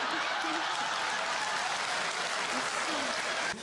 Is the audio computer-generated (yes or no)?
no